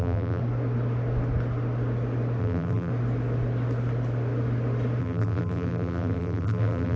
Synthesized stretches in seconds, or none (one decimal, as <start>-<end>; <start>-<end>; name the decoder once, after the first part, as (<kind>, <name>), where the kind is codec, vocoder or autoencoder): 0.0-0.4 (vocoder, BigVGAN v2); 2.4-2.9; 5.0-7.0